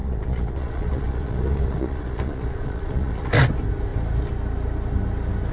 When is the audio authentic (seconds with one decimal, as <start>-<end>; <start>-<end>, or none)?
3.3-5.5